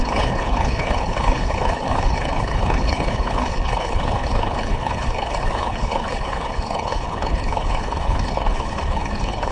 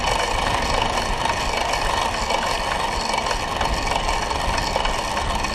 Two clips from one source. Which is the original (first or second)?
second